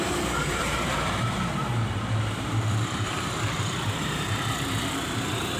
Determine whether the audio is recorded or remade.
remade